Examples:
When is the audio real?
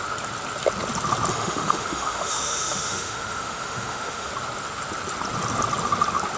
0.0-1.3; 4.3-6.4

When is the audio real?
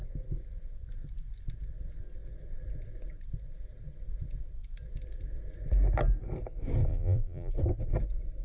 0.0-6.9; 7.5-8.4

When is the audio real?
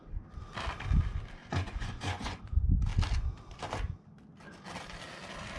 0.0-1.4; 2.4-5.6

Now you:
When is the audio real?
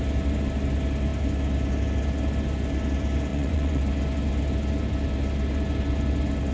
0.0-3.3; 3.8-6.5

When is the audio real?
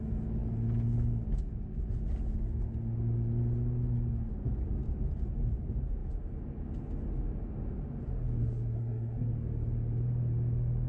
0.0-8.4; 9.3-10.9